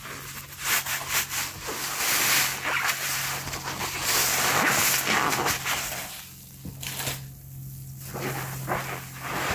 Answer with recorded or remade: recorded